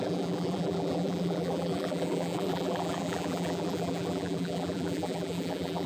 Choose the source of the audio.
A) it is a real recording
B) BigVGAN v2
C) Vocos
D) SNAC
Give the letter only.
B